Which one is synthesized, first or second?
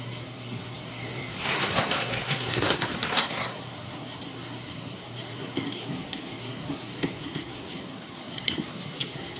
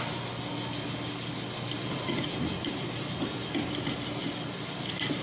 first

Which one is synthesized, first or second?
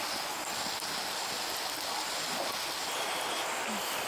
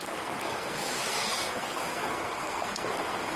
second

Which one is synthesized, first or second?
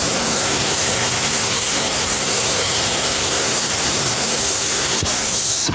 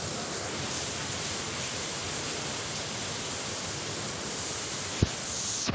first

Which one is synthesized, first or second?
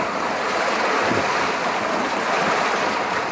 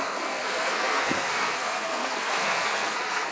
second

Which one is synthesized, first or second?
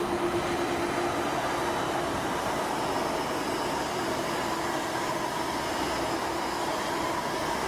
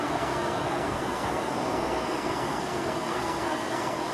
second